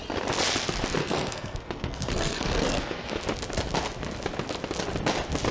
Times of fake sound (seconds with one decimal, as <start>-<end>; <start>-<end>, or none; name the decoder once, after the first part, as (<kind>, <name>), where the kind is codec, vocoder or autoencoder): 1.0-3.1 (codec, SNAC)